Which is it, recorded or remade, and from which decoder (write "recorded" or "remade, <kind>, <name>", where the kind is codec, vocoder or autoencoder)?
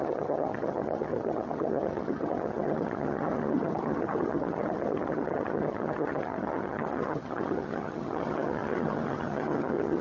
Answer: remade, vocoder, HiFi-GAN